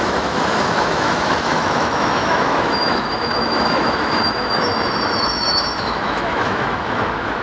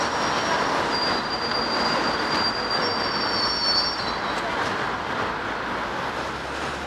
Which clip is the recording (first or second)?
second